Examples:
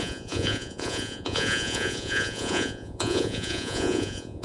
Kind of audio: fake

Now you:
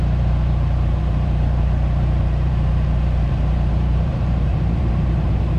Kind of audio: fake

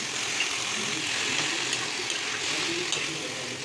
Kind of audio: real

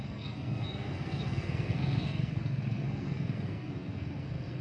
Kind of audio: fake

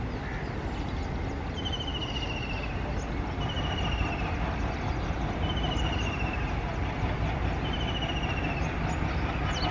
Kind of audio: real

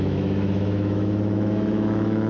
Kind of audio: fake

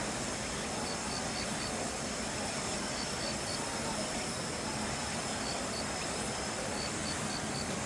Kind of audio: real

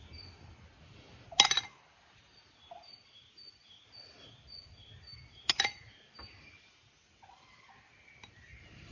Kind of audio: real